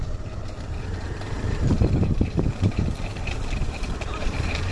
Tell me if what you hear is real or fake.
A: fake